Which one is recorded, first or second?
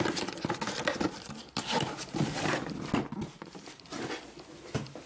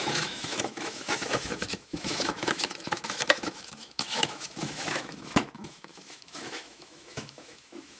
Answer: first